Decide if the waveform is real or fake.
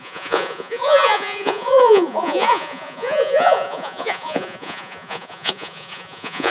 fake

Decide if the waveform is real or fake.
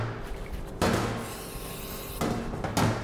real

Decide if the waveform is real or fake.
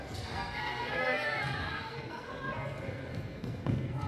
fake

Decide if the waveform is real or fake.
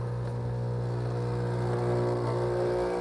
real